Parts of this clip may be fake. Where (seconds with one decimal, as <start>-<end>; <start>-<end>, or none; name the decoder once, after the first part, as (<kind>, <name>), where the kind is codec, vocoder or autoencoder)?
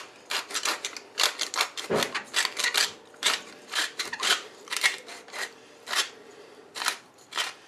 2.8-7.7 (vocoder, BigVGAN v2)